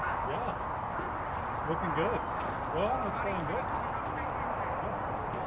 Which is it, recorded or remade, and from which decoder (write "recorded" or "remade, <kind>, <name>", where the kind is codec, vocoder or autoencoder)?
recorded